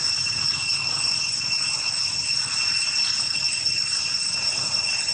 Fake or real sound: real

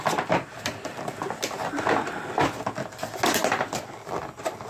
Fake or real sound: real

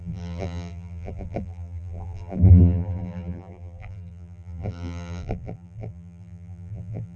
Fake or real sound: fake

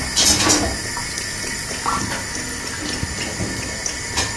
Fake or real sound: real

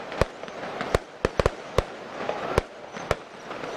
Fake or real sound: real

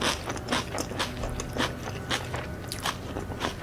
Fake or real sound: real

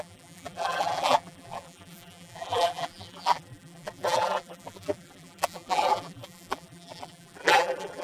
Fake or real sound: fake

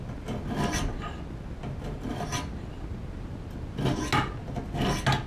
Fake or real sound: real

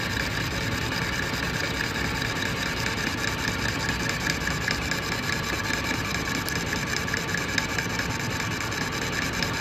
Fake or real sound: real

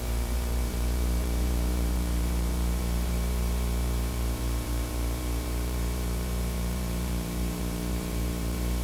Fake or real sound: fake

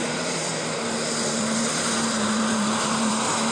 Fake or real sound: fake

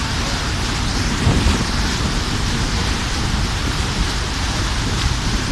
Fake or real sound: fake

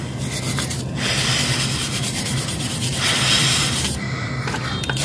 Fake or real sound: real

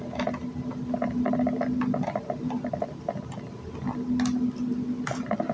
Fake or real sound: real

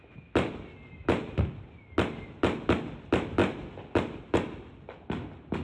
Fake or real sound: real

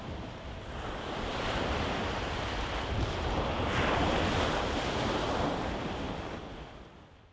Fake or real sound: real